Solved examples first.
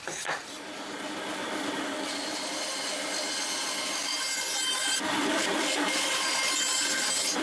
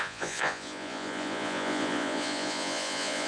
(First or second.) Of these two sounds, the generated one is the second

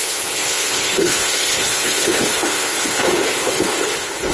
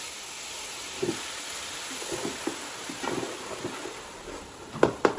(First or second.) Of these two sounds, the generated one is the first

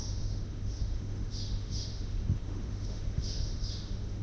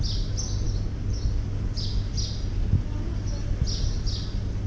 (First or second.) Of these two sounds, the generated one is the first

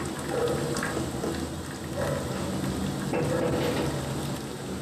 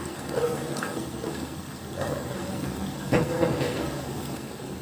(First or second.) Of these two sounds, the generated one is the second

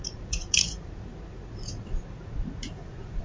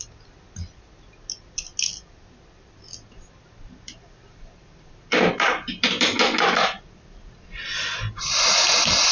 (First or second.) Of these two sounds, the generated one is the first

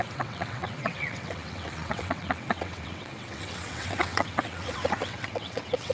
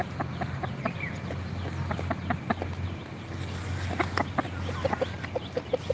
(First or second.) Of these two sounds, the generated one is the first